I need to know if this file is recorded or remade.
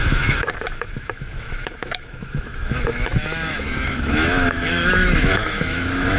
remade